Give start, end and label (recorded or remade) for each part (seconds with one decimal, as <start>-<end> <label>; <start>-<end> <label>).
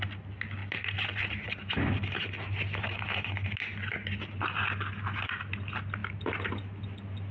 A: 0.0-7.3 recorded